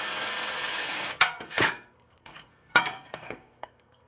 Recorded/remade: remade